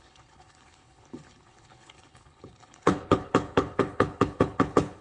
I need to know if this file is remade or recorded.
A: remade